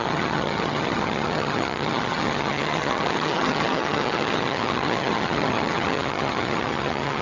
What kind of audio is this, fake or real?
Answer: fake